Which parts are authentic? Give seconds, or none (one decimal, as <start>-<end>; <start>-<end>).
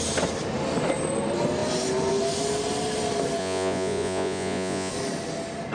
0.0-3.4; 4.9-5.7